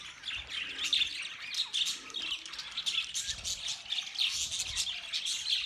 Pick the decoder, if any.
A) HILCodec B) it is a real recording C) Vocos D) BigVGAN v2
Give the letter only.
B